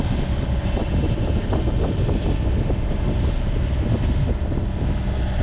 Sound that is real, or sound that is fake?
real